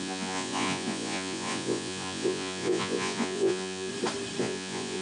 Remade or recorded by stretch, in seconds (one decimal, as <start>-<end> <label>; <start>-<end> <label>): 0.0-3.9 remade; 3.9-4.4 recorded; 4.4-5.0 remade